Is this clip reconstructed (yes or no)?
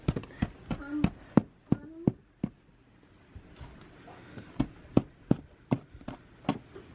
no